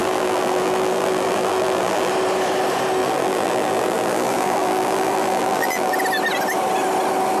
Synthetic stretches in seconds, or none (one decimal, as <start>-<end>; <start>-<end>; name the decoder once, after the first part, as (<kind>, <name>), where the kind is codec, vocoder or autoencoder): 0.0-2.1 (vocoder, BigVGAN v2); 3.0-5.9